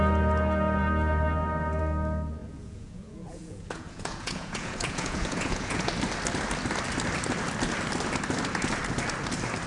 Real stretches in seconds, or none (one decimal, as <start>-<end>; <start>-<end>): 0.0-2.4; 5.9-9.7